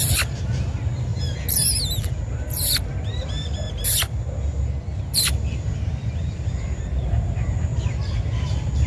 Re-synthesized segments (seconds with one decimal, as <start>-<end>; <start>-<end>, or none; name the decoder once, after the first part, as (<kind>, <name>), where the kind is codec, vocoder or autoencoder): 0.0-1.1 (vocoder, BigVGAN v2); 5.1-7.7; 8.4-8.9